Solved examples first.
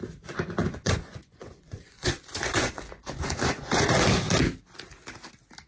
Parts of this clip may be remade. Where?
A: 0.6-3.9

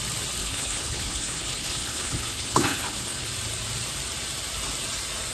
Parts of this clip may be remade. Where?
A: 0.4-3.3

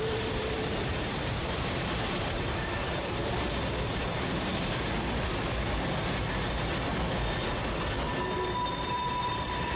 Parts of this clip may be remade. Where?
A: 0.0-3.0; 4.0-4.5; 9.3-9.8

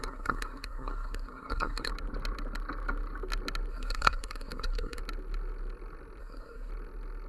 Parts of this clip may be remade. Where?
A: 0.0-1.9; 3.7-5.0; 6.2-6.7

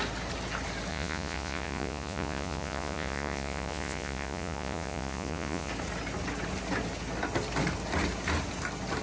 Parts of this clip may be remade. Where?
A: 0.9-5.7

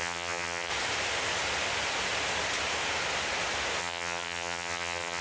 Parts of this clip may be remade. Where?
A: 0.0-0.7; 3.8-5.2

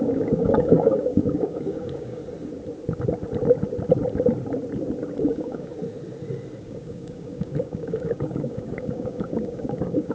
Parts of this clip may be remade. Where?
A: 0.0-2.2; 5.2-5.7; 6.6-10.1